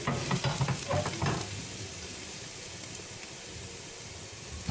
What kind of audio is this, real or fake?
real